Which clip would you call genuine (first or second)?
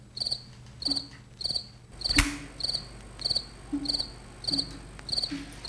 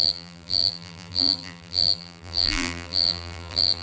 first